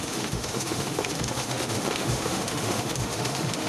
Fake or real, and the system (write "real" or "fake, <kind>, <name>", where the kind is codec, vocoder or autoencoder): fake, autoencoder, DAC-VAE